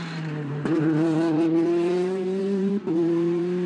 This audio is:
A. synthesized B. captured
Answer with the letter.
A